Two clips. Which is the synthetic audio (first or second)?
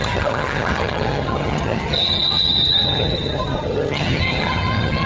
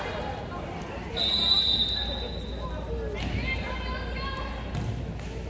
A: first